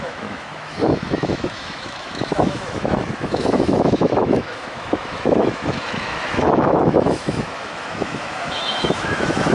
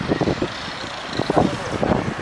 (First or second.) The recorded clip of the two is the second